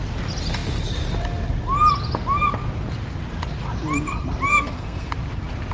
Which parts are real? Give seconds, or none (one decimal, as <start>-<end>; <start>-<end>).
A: 0.0-4.5; 5.1-5.7